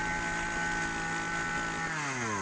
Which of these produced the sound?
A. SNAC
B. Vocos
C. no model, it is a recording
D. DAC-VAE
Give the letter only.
C